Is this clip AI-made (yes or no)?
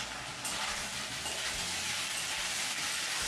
no